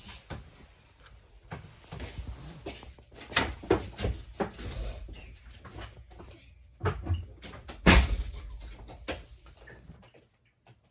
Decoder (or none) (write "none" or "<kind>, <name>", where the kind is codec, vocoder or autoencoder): none